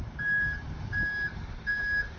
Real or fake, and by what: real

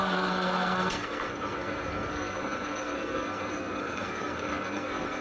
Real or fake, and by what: fake, codec, SNAC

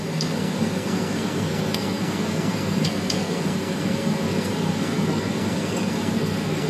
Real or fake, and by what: fake, codec, SNAC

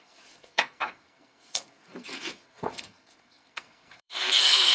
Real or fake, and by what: fake, codec, SNAC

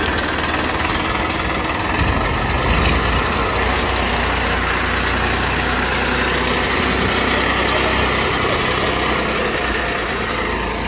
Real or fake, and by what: real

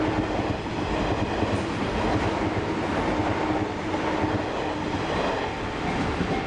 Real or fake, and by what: real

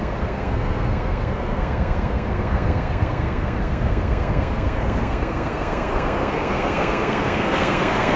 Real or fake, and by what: fake, codec, SNAC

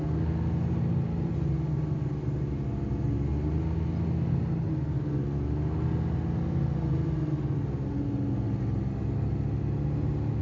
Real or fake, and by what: real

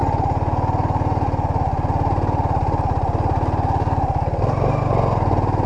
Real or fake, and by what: real